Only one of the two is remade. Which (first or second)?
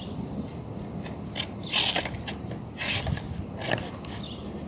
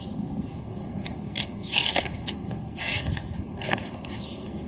second